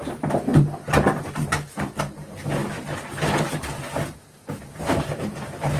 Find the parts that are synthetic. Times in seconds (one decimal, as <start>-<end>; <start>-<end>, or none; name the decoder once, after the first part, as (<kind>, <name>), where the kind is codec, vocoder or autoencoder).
0.0-0.5 (vocoder, BigVGAN v2); 1.1-2.6; 4.8-5.8